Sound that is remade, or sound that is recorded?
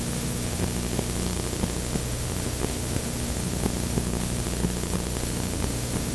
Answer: remade